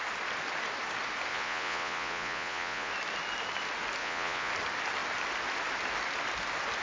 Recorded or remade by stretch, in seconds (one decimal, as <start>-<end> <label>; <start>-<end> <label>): 0.0-1.3 recorded; 1.3-2.9 remade; 2.9-4.0 recorded; 4.0-4.5 remade; 4.5-6.8 recorded